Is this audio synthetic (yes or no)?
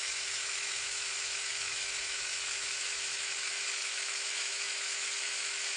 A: yes